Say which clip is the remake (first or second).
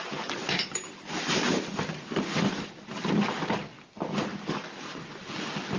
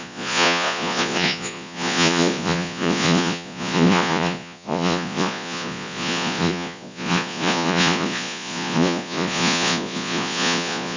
second